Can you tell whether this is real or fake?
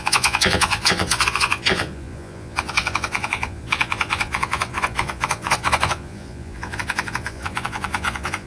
fake